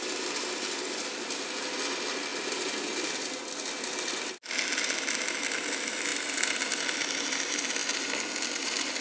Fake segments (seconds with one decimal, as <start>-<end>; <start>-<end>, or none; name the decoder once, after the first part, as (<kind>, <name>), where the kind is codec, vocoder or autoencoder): none